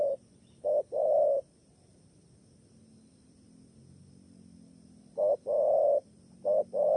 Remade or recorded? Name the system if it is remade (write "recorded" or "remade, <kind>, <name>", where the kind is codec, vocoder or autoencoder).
recorded